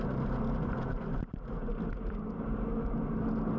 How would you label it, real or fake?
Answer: real